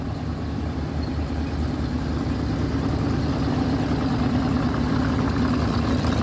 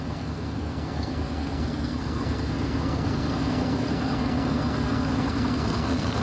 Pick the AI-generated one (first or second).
second